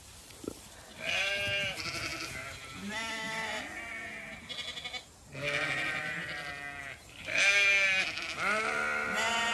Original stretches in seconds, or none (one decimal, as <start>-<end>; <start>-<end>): 0.0-9.5